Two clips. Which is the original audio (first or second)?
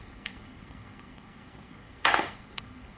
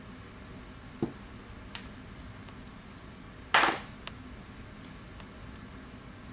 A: second